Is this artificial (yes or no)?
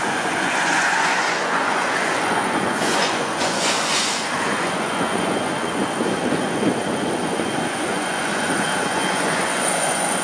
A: yes